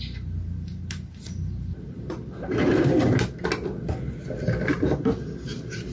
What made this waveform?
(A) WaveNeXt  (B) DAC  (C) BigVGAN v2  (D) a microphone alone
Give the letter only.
D